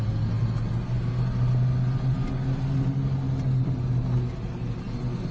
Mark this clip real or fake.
real